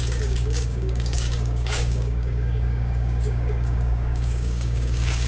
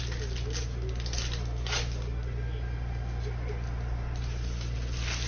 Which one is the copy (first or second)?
first